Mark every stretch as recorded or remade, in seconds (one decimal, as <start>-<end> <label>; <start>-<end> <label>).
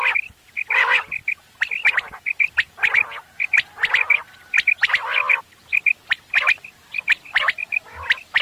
0.0-8.4 recorded